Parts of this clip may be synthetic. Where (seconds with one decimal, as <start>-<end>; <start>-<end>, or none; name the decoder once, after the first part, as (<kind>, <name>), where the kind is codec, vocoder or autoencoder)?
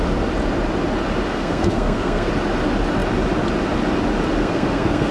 1.3-2.3 (codec, SNAC); 4.4-5.1